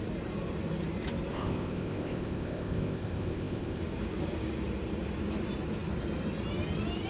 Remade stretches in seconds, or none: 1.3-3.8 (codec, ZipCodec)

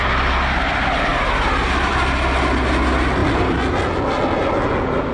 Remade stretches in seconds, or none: none

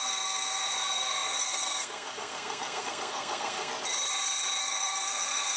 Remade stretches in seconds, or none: 0.0-3.7 (codec, SNAC); 4.6-5.6

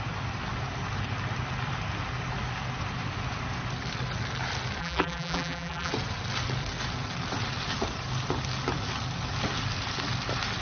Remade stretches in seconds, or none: 4.8-5.9 (vocoder, BigVGAN v2)

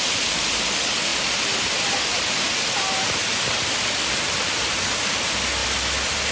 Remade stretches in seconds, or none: 1.1-4.9 (vocoder, BigVGAN v2)

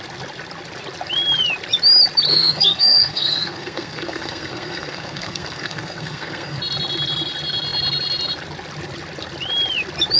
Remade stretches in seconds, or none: 2.3-6.6 (codec, SNAC)

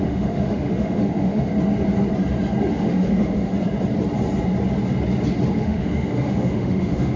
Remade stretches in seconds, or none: 0.0-1.5 (autoencoder, DAC-VAE); 2.7-3.5; 5.6-7.2

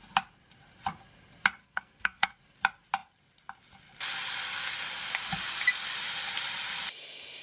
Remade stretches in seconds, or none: 1.6-2.4 (codec, SNAC)